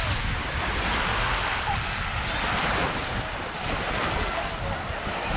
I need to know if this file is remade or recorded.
recorded